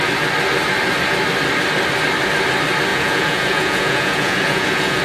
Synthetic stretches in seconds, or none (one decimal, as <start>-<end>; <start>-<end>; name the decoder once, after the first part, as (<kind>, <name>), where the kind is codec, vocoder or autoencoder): 2.9-5.0 (vocoder, Vocos)